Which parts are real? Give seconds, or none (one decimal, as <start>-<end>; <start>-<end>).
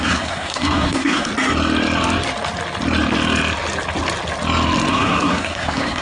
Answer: 1.3-4.9